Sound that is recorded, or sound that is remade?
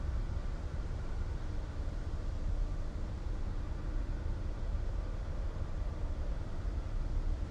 remade